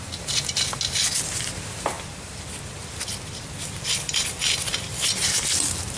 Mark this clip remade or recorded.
recorded